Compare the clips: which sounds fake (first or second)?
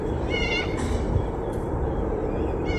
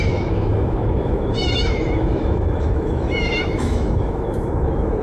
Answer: second